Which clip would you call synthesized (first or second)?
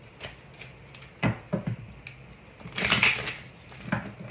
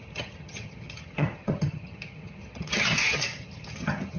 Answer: second